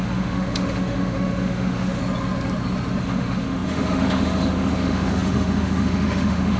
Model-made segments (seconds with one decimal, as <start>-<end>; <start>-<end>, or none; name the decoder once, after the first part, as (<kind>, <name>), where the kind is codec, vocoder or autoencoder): 0.0-2.0 (autoencoder, DAC-VAE); 3.0-6.6